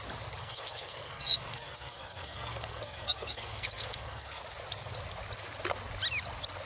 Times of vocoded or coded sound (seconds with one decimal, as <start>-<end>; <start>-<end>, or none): 0.4-4.4